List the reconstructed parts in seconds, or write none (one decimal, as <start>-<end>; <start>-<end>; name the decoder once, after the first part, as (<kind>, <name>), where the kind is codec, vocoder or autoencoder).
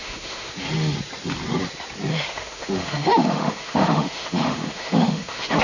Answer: 0.0-0.5 (autoencoder, DAC-VAE); 2.1-5.6